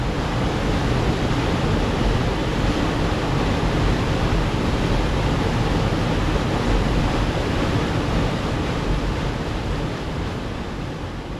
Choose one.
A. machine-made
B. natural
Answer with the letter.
B